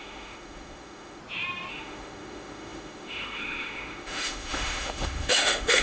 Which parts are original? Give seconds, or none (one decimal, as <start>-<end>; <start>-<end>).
1.2-1.7